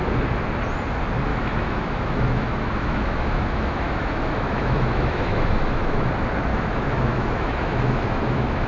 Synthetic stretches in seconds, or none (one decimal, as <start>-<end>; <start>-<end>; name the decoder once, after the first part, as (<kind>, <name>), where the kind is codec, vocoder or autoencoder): 1.3-6.1 (autoencoder, DAC-VAE); 6.5-8.7